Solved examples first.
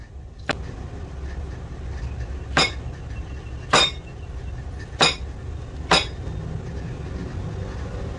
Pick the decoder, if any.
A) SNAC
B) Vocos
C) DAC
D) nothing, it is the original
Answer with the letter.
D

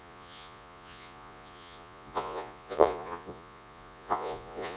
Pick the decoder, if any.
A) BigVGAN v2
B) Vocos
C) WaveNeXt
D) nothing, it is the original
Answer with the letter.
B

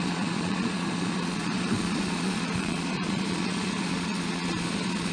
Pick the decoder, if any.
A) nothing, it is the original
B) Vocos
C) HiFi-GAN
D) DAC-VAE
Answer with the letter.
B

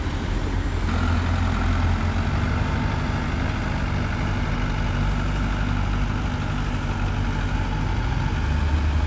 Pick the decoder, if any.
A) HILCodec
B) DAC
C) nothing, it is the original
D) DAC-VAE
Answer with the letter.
C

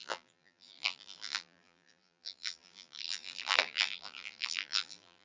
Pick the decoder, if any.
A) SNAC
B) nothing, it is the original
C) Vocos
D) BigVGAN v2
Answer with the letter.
D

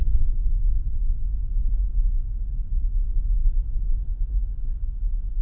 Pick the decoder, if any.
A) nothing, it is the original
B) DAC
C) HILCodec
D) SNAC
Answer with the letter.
A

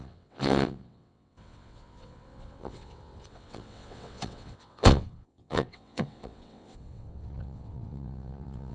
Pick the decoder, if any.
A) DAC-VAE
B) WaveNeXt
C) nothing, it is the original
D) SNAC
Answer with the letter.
B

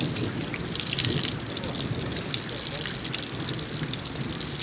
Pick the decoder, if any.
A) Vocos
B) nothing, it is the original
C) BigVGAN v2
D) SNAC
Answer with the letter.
B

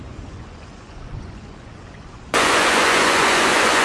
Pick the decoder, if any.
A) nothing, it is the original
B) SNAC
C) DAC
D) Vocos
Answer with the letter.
D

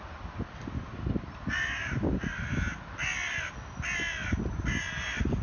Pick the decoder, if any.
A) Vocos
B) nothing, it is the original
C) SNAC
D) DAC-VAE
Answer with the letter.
B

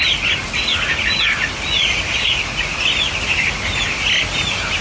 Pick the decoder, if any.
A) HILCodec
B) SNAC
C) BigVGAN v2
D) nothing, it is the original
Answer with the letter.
D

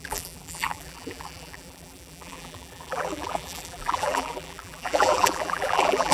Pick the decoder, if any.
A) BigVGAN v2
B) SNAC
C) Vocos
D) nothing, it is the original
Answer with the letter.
A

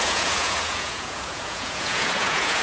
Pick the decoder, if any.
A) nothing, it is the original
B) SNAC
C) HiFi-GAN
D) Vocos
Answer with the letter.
D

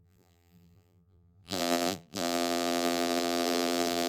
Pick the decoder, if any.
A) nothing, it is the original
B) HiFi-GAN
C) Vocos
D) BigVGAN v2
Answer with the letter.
D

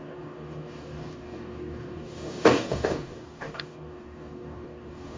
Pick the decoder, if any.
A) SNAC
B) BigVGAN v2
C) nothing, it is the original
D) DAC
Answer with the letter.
D